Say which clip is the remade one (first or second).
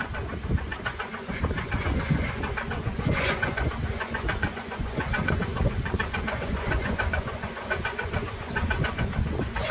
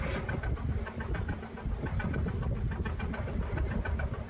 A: first